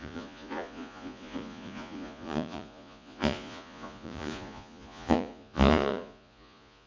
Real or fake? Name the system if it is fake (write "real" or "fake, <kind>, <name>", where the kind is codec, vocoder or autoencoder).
fake, vocoder, Vocos